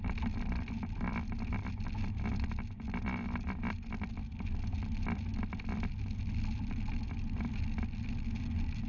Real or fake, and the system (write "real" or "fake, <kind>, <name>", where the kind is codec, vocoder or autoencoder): real